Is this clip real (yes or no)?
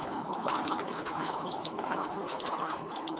no